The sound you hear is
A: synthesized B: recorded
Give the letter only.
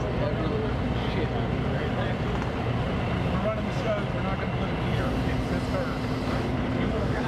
B